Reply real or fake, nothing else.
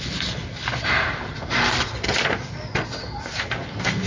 real